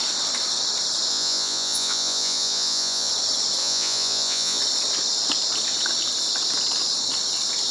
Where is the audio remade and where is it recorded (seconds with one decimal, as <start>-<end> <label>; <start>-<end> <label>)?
0.0-1.1 recorded; 1.1-3.1 remade; 3.1-3.6 recorded; 3.6-4.6 remade; 4.6-7.7 recorded